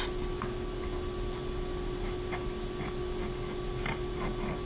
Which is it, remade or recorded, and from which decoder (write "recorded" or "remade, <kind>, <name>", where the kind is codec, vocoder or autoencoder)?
recorded